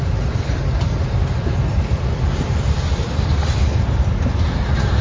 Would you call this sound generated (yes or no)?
yes